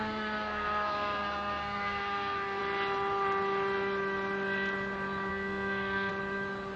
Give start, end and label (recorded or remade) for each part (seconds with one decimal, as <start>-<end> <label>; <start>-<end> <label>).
0.0-2.6 remade; 2.6-5.3 recorded; 5.3-6.1 remade; 6.1-6.8 recorded